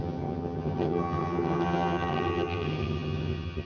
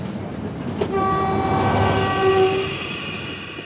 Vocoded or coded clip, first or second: first